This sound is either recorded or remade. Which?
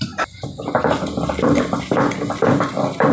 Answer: recorded